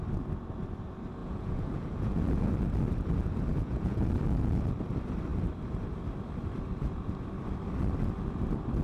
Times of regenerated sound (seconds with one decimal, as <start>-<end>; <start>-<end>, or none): 1.2-2.5; 3.5-4.0